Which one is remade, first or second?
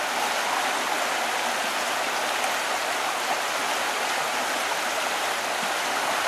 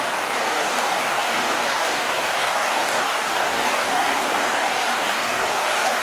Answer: second